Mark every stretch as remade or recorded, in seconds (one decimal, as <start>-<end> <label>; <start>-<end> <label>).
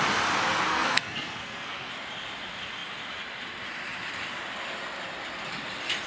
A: 0.0-0.7 recorded; 0.7-1.9 remade; 1.9-6.1 recorded